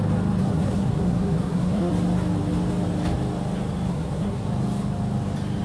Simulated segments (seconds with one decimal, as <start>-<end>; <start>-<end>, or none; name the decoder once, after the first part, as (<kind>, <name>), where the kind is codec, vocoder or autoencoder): 0.4-1.9 (codec, SNAC); 3.9-4.5

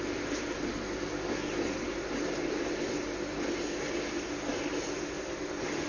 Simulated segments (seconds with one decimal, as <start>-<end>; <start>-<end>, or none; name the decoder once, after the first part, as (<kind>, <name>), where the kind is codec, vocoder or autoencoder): none

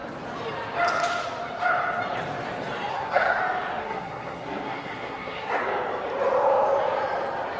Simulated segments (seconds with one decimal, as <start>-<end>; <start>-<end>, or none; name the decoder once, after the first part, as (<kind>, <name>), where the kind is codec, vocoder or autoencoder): 2.9-3.4 (codec, SNAC); 3.8-5.6

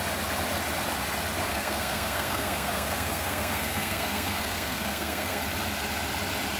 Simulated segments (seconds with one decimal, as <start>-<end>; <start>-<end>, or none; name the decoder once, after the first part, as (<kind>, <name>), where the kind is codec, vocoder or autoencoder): 1.5-5.4 (codec, SNAC)

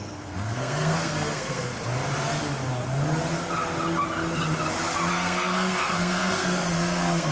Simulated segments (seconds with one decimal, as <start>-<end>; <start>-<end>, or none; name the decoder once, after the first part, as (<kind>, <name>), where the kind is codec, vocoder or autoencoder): 0.0-1.7 (codec, SNAC); 5.1-7.3

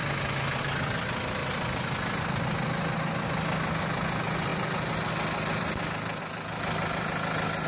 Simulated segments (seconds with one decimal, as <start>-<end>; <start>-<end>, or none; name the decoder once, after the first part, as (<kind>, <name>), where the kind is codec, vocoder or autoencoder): none